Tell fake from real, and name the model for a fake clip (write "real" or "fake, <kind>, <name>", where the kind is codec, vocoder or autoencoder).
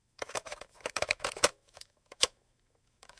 fake, autoencoder, DAC-VAE